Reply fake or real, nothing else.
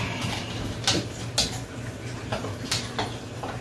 real